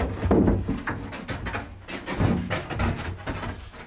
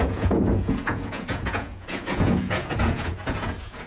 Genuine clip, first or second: first